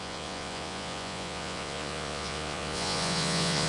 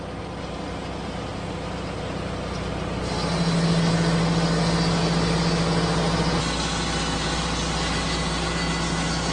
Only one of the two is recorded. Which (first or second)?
second